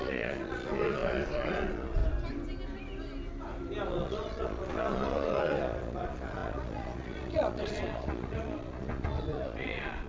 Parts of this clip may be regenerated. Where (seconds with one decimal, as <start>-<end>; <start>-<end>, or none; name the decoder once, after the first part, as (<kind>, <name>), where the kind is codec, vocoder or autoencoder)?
0.0-2.0 (vocoder, Vocos); 3.9-10.1